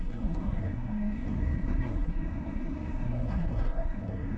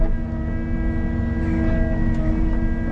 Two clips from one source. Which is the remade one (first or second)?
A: first